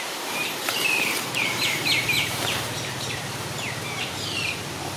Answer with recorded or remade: remade